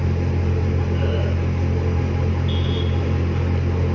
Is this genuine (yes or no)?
yes